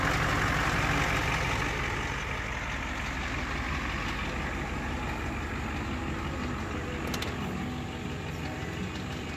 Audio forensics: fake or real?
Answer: real